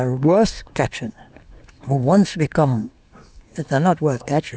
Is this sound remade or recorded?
remade